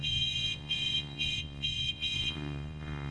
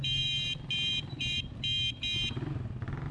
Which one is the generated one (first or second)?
first